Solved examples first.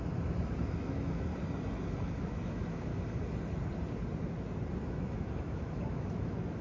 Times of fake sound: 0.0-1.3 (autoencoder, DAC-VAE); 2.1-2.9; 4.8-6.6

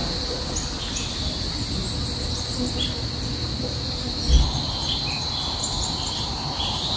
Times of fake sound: none

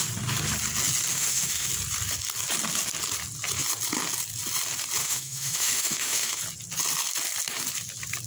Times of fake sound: 1.1-1.7 (autoencoder, DAC-VAE); 5.0-6.4

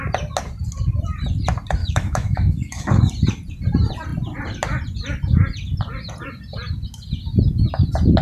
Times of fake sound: 1.8-3.0 (autoencoder, DAC-VAE)